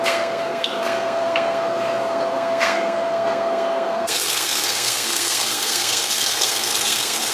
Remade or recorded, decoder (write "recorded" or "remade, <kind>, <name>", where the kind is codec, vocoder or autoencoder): remade, codec, SNAC